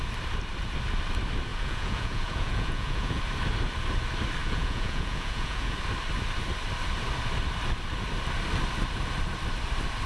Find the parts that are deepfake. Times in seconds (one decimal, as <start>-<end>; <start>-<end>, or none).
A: 1.5-3.2; 4.4-5.8